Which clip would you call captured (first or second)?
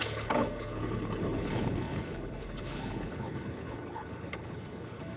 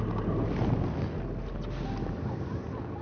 second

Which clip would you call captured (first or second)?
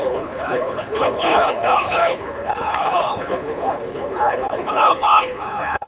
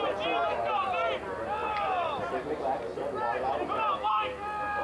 second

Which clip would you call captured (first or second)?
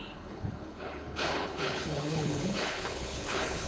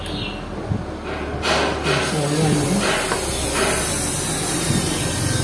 second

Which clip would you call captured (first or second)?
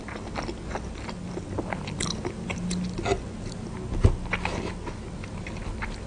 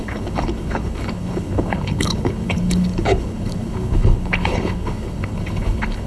first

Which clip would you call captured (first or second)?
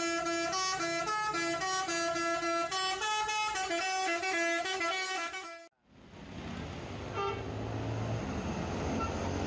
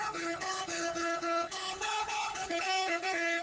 first